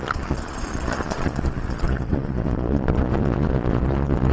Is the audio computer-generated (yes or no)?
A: yes